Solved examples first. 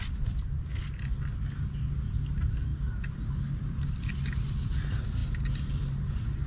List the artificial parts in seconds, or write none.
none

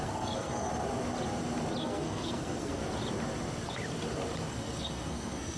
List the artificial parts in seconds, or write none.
0.0-0.7 (codec, SNAC); 1.8-2.8; 4.5-5.6

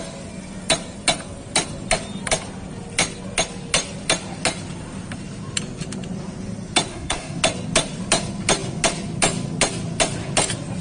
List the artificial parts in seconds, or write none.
6.9-7.4 (codec, SNAC)

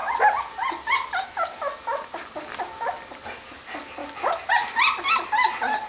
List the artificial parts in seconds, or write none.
none

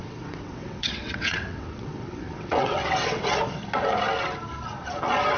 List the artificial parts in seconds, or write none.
0.0-3.2 (vocoder, WaveNeXt)